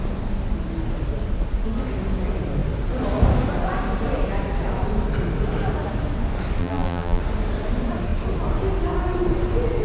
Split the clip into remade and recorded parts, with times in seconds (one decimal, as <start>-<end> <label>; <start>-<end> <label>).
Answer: 0.0-6.6 recorded; 6.6-7.2 remade; 7.2-9.8 recorded